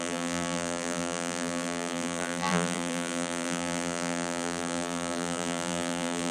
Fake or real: fake